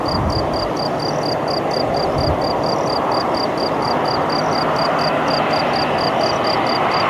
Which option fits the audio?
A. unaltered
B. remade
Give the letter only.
A